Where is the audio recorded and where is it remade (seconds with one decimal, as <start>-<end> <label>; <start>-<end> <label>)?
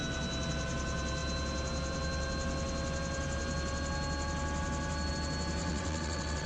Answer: 0.0-5.6 recorded; 5.6-6.5 remade